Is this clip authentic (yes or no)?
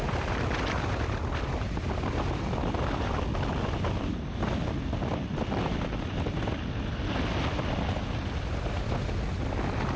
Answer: yes